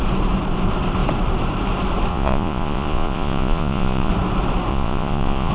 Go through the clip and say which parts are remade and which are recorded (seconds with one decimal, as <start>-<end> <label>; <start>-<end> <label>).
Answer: 0.0-2.1 recorded; 2.1-4.1 remade; 4.1-4.7 recorded; 4.7-5.5 remade